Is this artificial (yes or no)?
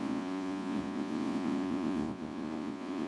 yes